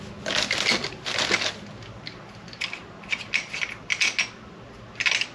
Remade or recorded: recorded